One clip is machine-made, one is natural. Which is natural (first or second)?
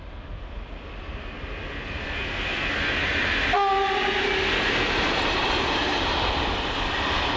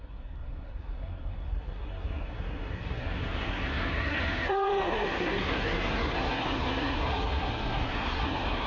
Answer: first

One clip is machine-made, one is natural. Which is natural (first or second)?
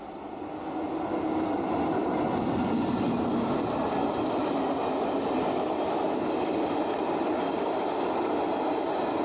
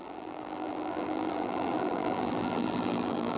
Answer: first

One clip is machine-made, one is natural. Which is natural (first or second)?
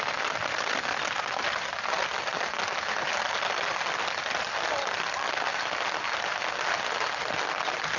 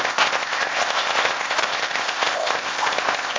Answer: first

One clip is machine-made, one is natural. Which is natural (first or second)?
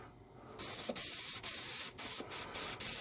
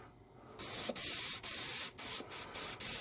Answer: first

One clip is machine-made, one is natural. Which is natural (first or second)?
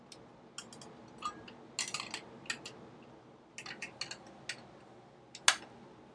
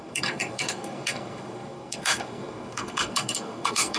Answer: first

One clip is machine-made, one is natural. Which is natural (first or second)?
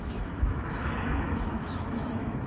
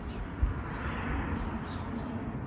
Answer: second